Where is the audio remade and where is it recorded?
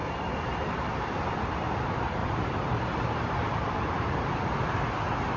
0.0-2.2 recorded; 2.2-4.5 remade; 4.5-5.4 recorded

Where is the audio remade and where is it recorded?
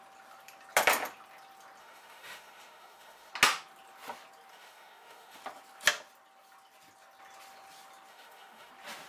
0.0-1.8 recorded; 1.8-3.3 remade; 3.3-4.5 recorded; 4.5-5.4 remade; 5.4-8.1 recorded; 8.1-8.7 remade; 8.7-9.1 recorded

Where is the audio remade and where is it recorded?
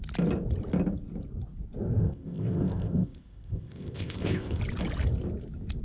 0.0-2.0 recorded; 2.0-4.6 remade; 4.6-5.8 recorded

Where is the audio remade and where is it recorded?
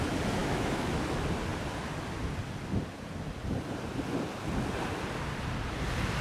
0.0-0.4 recorded; 0.4-0.9 remade; 0.9-6.2 recorded